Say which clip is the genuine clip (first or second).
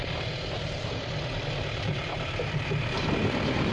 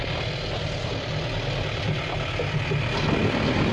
second